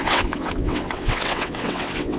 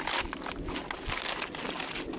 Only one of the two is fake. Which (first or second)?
first